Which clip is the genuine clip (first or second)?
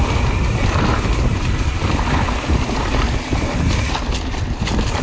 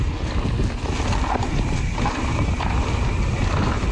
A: second